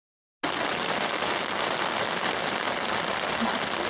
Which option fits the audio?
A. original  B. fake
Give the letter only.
A